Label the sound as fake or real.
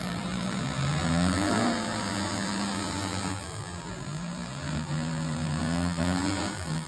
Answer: fake